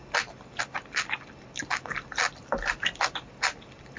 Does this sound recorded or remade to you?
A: recorded